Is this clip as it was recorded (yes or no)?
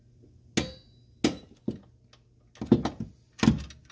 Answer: yes